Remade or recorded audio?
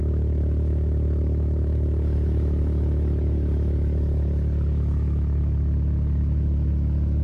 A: remade